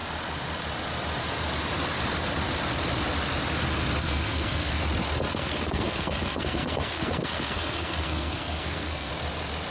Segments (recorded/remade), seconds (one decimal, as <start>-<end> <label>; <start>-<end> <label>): 0.0-4.0 recorded; 4.0-4.8 remade; 4.8-5.3 recorded; 5.3-9.1 remade; 9.1-9.7 recorded